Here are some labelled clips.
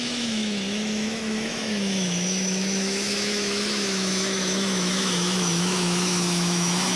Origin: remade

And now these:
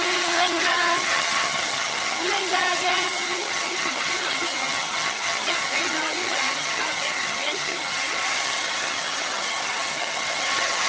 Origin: remade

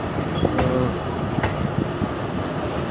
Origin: recorded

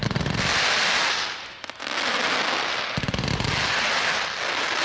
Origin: recorded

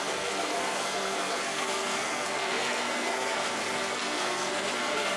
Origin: remade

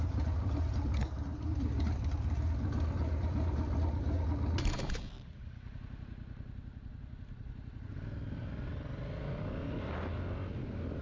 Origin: recorded